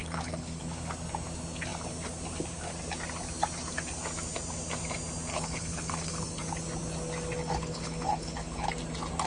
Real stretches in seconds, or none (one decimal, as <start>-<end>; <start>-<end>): 0.6-5.3; 6.4-7.4; 8.7-9.3